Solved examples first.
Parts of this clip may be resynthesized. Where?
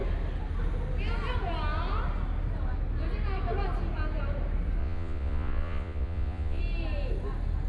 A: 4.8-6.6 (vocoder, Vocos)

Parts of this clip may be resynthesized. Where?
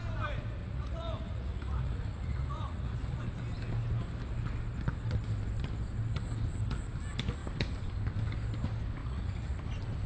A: 0.6-3.2 (vocoder, Vocos); 9.0-9.6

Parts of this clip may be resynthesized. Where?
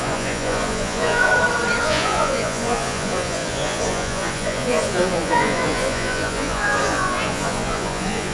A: 0.0-1.3 (vocoder, Vocos); 1.8-8.3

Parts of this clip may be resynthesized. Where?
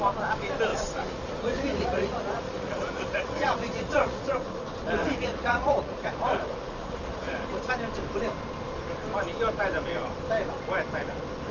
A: 0.7-4.6 (vocoder, Vocos); 5.0-7.7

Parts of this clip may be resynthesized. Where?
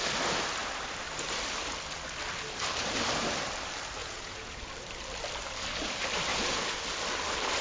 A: 4.0-4.7 (vocoder, Vocos); 6.3-6.8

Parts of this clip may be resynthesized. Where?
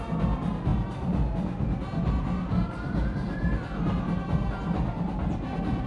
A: none